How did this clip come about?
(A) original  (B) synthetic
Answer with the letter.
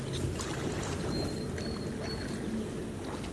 A